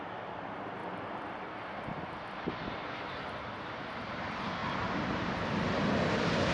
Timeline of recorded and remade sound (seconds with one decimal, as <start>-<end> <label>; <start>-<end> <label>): 0.0-0.8 recorded; 0.8-1.5 remade; 1.5-6.5 recorded